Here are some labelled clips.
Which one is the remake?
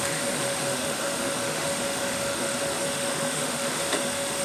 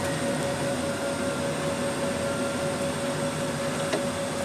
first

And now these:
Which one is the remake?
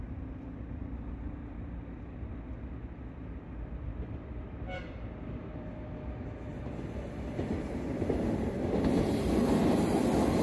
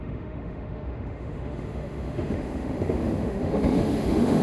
second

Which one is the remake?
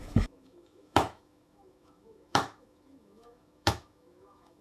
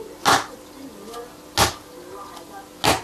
first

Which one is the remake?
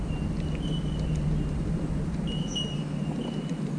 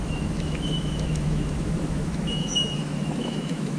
second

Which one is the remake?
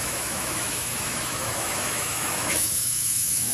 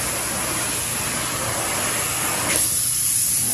first